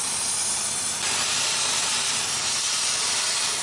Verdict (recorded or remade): recorded